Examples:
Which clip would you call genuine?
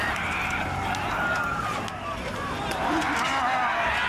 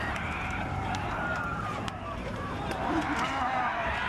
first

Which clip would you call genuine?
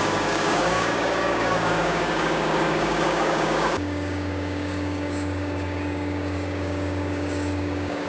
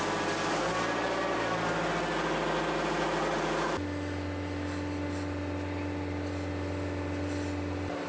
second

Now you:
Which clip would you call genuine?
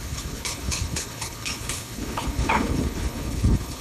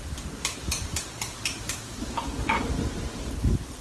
second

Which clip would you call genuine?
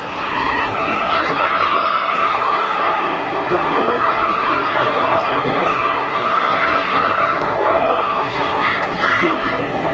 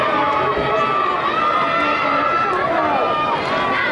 second